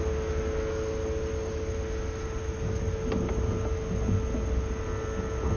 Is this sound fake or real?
real